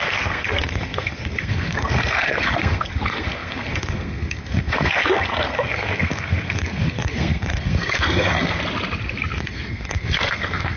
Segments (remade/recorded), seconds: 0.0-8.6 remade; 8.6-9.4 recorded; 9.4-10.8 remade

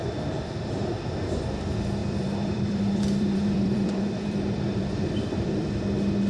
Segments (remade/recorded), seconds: 0.0-2.0 recorded; 2.0-5.8 remade; 5.8-6.3 recorded

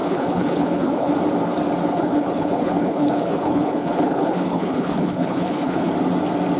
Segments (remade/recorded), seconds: 0.0-1.1 remade; 1.1-1.9 recorded; 1.9-5.9 remade; 5.9-6.6 recorded